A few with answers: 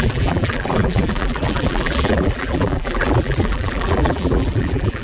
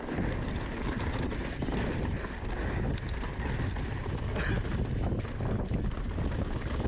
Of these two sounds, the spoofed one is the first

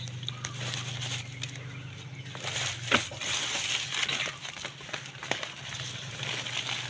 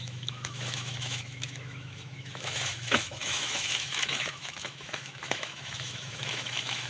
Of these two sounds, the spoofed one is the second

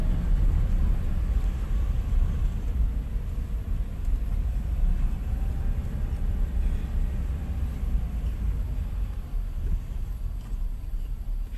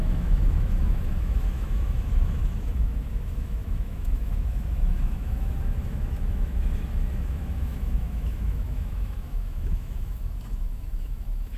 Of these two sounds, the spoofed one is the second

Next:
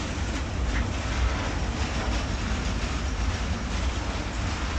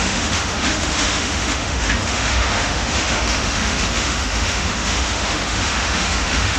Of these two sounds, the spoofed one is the second